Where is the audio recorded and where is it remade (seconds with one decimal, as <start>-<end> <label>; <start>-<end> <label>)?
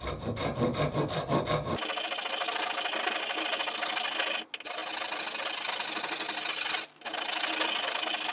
0.0-8.3 recorded